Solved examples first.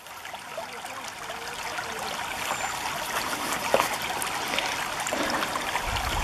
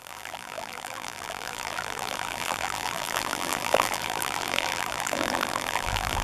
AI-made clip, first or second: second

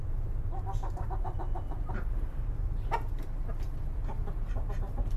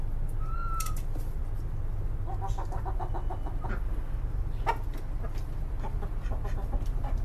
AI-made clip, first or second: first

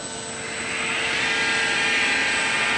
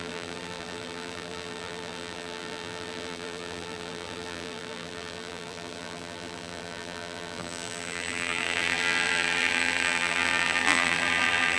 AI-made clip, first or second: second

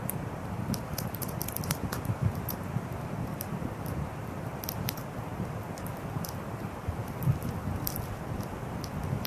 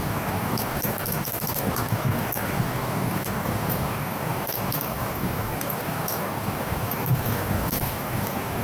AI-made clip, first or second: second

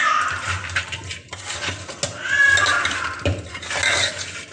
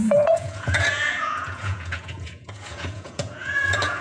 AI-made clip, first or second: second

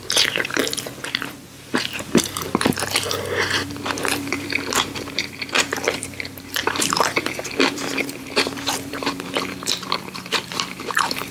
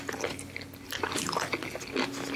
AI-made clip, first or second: first